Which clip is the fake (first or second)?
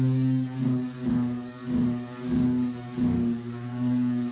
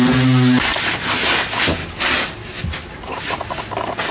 first